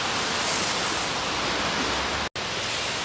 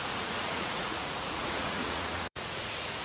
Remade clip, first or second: second